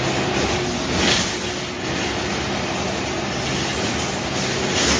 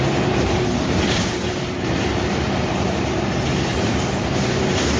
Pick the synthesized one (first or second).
second